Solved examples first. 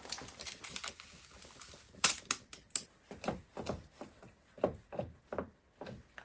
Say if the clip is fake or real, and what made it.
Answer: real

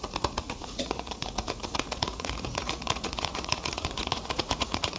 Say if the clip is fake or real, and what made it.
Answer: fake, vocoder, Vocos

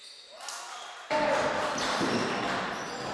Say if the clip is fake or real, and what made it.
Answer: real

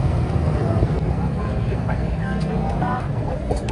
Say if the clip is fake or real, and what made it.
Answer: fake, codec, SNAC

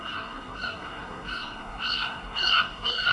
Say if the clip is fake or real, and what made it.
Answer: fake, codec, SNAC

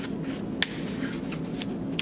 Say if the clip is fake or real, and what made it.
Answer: real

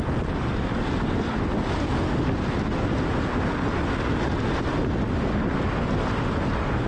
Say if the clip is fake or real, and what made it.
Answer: real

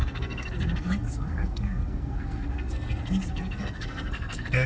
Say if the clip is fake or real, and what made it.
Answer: fake, codec, SNAC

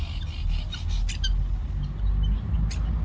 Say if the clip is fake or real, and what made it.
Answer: real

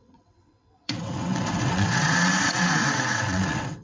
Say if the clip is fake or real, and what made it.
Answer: fake, vocoder, WaveNeXt